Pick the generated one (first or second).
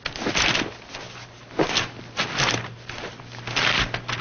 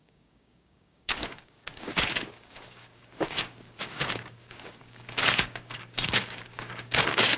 second